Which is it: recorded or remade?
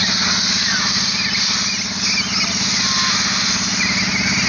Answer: recorded